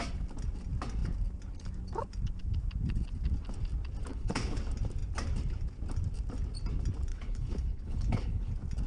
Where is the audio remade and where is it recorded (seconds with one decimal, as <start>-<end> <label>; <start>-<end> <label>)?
0.0-4.1 recorded; 4.1-4.6 remade; 4.6-7.1 recorded; 7.1-8.5 remade; 8.5-8.9 recorded